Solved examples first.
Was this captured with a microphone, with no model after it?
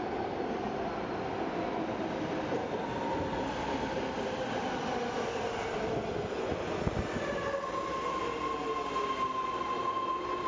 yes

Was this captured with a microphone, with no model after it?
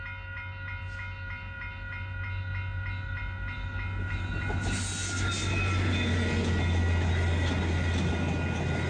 yes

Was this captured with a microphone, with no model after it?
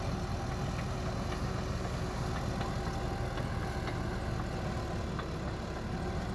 yes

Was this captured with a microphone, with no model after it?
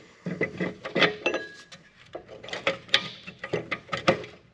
yes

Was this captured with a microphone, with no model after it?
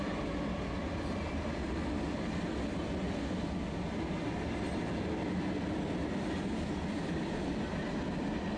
yes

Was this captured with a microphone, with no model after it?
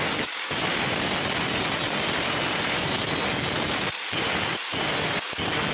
yes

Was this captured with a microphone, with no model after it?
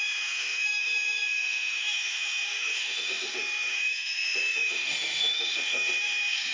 no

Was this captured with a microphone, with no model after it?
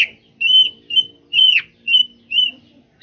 yes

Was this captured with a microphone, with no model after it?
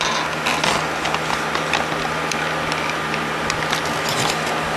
yes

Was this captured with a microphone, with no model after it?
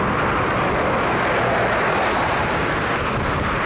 yes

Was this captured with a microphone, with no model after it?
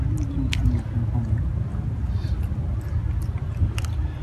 yes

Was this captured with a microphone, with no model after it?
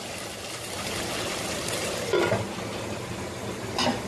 yes